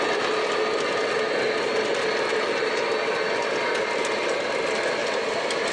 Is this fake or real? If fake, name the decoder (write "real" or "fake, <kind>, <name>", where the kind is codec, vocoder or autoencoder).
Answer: real